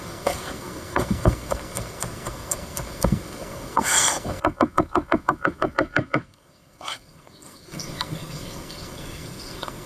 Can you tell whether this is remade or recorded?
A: remade